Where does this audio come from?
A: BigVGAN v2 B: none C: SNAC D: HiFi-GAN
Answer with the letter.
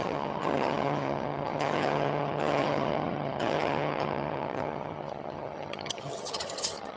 D